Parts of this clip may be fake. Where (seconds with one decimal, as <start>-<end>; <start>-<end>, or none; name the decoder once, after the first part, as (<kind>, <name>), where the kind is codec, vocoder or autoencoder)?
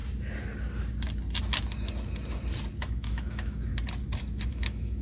2.8-3.7 (autoencoder, DAC-VAE); 4.5-5.0